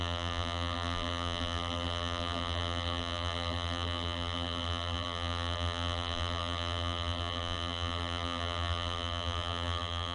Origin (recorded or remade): remade